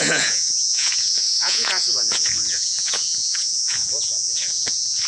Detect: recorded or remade remade